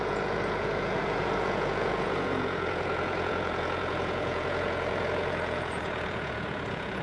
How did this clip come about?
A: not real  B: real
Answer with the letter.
A